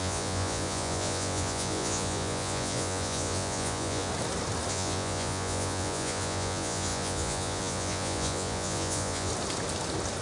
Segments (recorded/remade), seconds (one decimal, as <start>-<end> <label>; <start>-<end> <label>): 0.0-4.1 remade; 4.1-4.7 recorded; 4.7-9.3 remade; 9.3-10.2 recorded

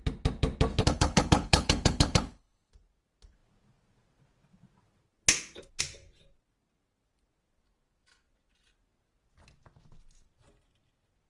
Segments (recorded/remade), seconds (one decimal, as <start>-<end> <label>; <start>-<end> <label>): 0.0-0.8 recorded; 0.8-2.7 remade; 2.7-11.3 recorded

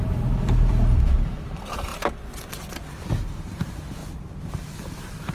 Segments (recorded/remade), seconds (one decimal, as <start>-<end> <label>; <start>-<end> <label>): 0.0-1.9 remade; 1.9-3.2 recorded; 3.2-4.0 remade; 4.0-4.5 recorded; 4.5-5.3 remade